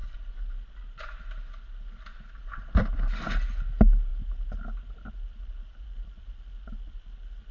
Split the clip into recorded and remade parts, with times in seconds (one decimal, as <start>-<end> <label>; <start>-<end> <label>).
0.0-7.5 recorded